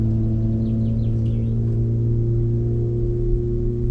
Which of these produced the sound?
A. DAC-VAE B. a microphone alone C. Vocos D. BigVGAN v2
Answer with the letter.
B